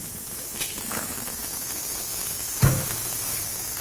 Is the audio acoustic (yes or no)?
no